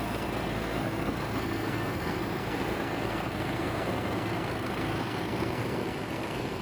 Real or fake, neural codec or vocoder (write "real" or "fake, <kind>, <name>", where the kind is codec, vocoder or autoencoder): fake, codec, SNAC